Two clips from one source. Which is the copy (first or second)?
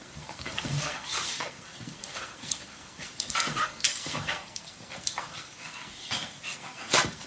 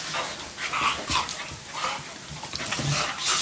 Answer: first